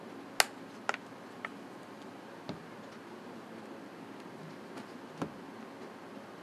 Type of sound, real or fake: real